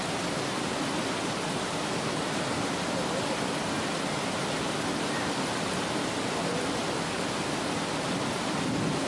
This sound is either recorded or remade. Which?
recorded